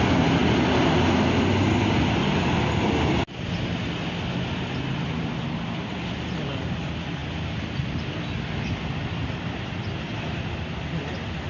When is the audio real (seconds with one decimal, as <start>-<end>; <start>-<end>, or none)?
0.0-11.5